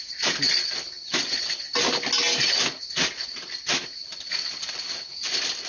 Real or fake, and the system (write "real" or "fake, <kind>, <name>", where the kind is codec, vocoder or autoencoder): real